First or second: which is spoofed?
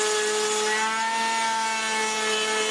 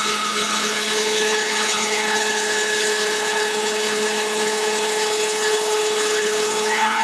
second